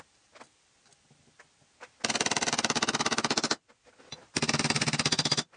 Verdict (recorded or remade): recorded